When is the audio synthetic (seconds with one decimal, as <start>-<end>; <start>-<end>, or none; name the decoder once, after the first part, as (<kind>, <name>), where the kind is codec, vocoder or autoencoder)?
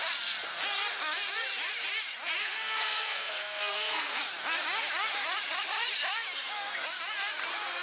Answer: 2.4-4.2 (codec, SNAC)